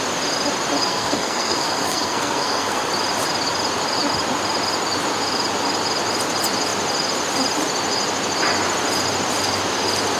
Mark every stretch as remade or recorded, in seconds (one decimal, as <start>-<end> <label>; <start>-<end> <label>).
0.0-0.8 recorded; 0.8-2.9 remade; 2.9-10.2 recorded